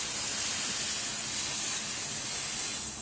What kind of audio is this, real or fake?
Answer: real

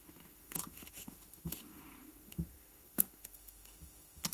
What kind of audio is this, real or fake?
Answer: fake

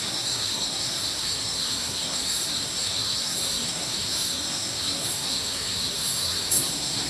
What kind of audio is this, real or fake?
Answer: fake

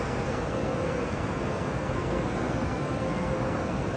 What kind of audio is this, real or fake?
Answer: fake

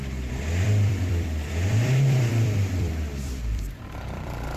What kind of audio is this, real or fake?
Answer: fake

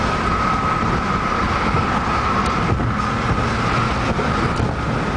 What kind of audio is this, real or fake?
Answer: real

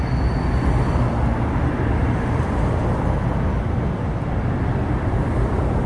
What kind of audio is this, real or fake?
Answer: real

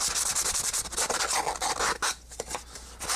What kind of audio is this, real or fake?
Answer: real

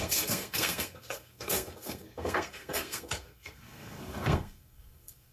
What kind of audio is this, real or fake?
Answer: fake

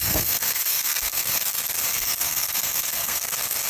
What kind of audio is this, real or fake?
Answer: fake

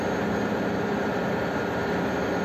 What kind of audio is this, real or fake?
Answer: real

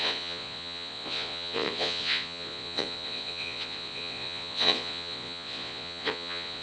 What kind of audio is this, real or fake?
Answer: fake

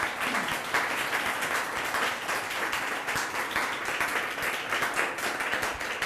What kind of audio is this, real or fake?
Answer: real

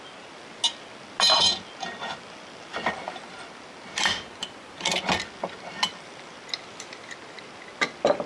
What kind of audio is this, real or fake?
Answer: real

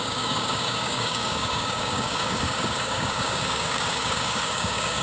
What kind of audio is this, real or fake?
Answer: fake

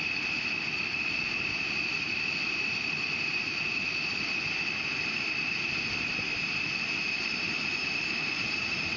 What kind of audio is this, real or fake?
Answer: fake